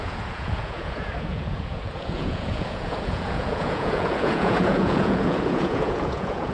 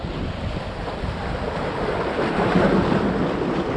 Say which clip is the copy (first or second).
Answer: first